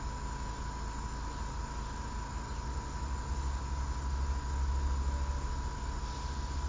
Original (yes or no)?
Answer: yes